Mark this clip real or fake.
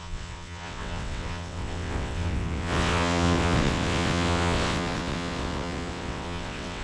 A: fake